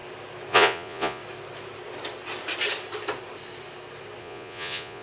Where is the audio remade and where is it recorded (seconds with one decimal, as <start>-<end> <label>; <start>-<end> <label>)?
0.0-0.5 recorded; 0.5-1.2 remade; 1.2-4.2 recorded; 4.2-5.0 remade

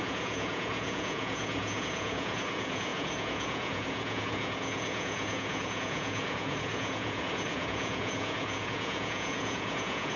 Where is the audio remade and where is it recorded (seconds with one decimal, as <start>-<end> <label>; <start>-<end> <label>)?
0.0-10.2 remade

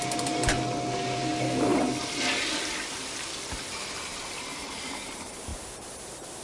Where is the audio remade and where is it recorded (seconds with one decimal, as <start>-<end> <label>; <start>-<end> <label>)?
0.0-6.4 recorded

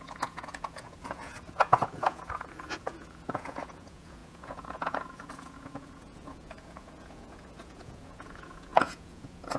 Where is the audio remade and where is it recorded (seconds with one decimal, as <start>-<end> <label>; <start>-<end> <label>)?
0.0-9.6 remade

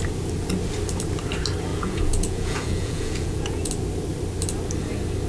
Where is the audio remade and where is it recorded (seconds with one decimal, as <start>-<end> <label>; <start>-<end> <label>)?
0.0-1.7 recorded; 1.7-3.7 remade; 3.7-5.3 recorded

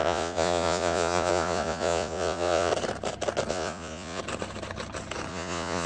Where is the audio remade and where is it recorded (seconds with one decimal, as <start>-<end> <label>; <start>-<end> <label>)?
0.0-2.7 remade; 2.7-3.5 recorded; 3.5-4.2 remade; 4.2-5.3 recorded; 5.3-5.9 remade